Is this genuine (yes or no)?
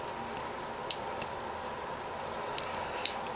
yes